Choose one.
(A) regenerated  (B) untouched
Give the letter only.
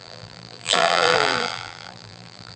A